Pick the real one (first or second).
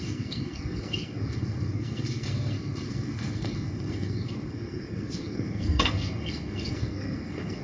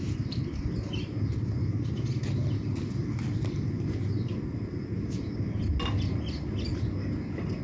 second